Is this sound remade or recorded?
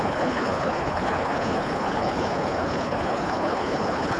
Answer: remade